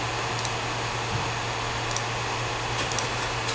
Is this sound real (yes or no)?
yes